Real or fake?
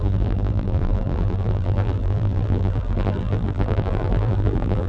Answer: fake